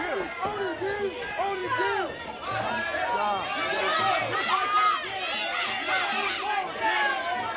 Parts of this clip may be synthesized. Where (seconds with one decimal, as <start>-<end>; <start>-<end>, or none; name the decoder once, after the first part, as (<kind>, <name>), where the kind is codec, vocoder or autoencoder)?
none